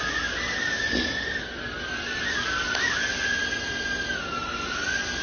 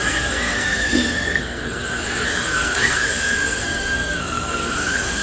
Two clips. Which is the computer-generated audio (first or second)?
second